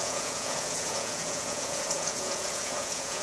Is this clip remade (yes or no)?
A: yes